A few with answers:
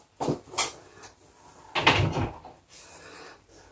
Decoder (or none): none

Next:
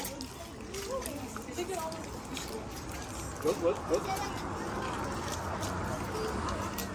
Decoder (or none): none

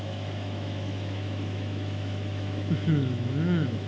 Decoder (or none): autoencoder, DAC-VAE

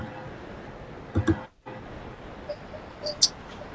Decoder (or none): none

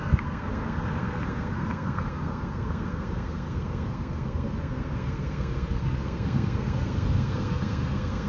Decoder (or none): codec, SNAC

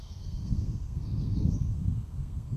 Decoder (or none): codec, SNAC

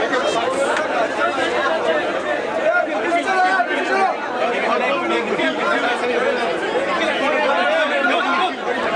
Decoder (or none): none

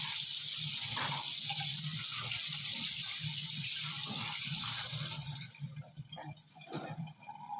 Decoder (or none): vocoder, BigVGAN v2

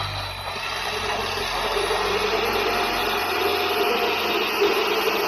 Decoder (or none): none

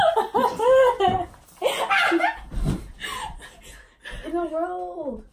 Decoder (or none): none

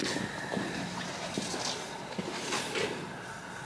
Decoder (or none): none